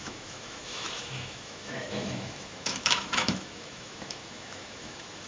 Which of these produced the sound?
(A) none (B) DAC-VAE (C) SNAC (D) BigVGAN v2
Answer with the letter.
B